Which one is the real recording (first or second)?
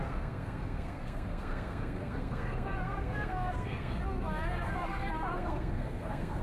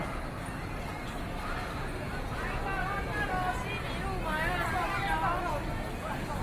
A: second